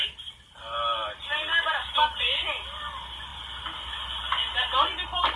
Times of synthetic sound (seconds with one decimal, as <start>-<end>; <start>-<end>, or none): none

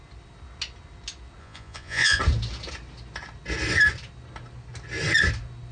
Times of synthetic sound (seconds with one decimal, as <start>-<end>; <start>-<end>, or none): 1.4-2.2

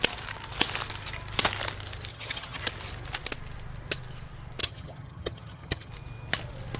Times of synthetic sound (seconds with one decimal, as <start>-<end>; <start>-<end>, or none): 2.1-2.6; 4.6-5.9

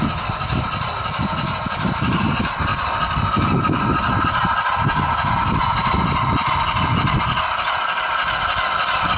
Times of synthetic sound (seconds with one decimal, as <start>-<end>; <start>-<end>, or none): none

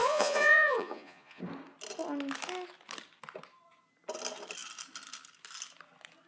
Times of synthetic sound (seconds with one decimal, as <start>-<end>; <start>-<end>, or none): 0.0-1.4